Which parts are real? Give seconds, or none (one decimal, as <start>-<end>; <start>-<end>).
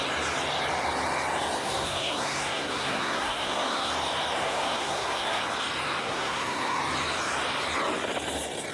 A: 0.0-1.6; 3.9-4.4; 5.4-6.0; 6.8-8.7